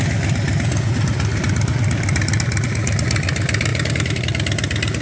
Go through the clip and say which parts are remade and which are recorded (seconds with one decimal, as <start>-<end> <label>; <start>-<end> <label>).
0.0-3.7 recorded; 3.7-4.2 remade; 4.2-5.0 recorded